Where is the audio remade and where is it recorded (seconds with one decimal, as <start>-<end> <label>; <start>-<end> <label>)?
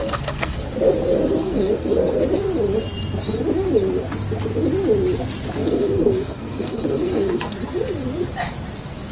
0.0-0.7 remade; 0.7-1.2 recorded; 1.2-2.2 remade; 2.2-5.6 recorded; 5.6-7.5 remade; 7.5-9.1 recorded